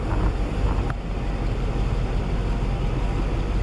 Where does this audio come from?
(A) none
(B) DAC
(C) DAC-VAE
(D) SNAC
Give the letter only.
A